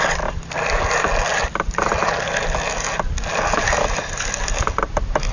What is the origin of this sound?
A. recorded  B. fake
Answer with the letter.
A